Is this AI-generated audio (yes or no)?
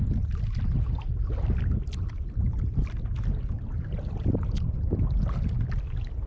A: no